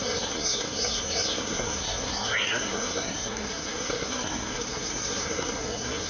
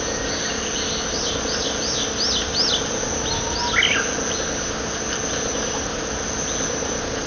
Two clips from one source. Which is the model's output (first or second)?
first